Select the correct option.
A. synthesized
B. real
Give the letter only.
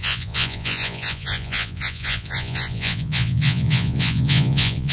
A